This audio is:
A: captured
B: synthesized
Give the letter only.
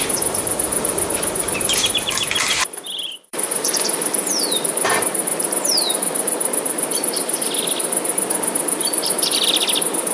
B